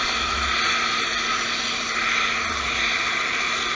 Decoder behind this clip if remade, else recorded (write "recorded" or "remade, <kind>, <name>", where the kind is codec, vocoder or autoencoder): recorded